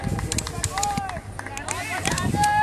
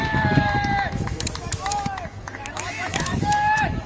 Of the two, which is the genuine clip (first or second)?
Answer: first